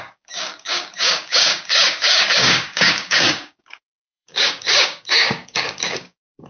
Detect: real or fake fake